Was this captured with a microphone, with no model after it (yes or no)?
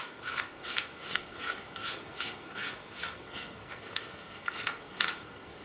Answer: no